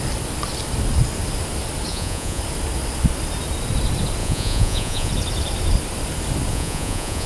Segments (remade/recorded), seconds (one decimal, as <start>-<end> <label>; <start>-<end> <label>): 0.0-1.9 recorded; 1.9-2.4 remade; 2.4-4.2 recorded; 4.2-5.1 remade; 5.1-6.5 recorded; 6.5-7.3 remade